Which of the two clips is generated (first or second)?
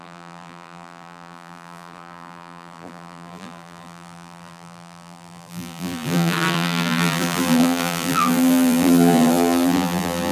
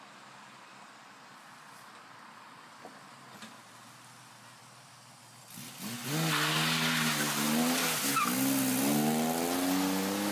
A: first